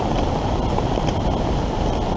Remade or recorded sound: recorded